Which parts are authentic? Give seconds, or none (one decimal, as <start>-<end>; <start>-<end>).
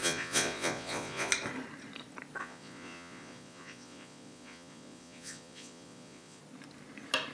1.3-2.4; 6.4-7.3